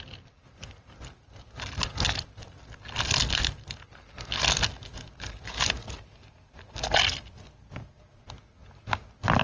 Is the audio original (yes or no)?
yes